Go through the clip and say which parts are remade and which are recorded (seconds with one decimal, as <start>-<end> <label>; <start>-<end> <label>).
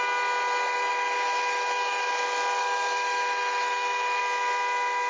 0.0-0.9 recorded; 0.9-2.1 remade; 2.1-2.6 recorded; 2.6-4.2 remade; 4.2-5.1 recorded